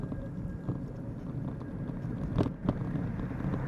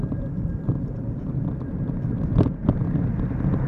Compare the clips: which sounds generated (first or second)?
second